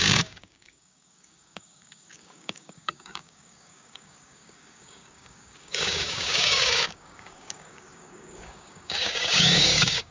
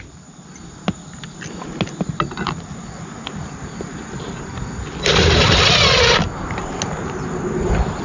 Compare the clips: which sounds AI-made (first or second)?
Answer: first